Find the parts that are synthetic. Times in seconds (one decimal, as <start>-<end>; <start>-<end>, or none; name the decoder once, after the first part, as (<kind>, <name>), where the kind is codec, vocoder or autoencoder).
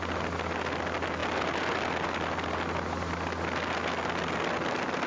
none